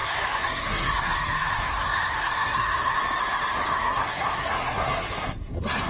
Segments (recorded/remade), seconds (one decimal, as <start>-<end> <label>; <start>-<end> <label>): 0.0-3.0 remade; 3.0-3.7 recorded; 3.7-5.9 remade